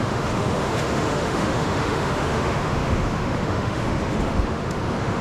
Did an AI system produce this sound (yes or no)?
yes